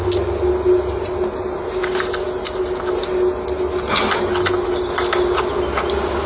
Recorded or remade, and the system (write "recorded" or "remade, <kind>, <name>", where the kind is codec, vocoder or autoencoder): recorded